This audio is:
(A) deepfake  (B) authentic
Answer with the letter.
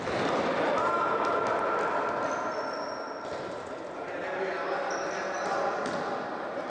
B